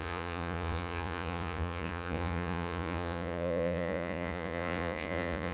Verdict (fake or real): fake